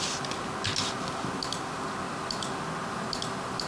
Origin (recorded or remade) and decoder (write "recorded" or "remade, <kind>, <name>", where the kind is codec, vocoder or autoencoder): recorded